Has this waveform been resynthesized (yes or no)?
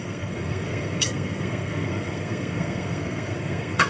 yes